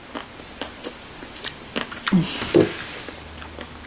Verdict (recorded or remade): recorded